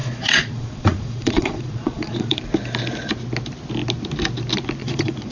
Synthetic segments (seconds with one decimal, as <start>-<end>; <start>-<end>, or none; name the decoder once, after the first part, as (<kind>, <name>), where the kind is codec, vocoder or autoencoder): 0.0-2.4 (vocoder, Vocos); 4.8-5.3